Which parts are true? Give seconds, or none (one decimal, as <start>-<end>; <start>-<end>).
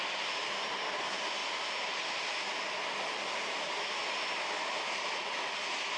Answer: 0.0-6.0